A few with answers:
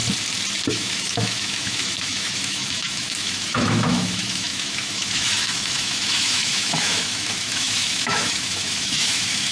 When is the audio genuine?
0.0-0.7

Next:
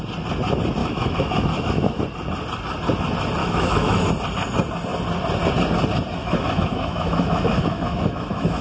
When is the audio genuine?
0.0-0.8; 2.0-3.4; 4.1-6.2